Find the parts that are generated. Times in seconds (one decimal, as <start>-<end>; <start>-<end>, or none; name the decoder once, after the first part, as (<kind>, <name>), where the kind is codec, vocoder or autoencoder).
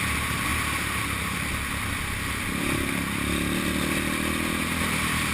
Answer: none